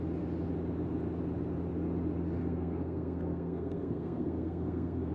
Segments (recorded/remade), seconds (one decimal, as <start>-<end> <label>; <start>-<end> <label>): 0.0-2.4 recorded; 2.4-5.1 remade